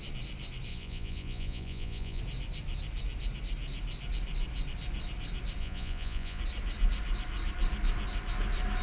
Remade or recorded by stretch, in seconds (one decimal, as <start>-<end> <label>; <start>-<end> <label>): 0.0-0.7 recorded; 0.7-2.2 remade; 2.2-5.6 recorded; 5.6-6.4 remade; 6.4-8.8 recorded